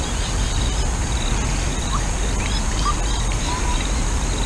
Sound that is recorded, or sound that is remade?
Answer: recorded